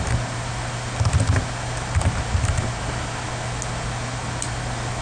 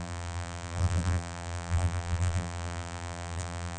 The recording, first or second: first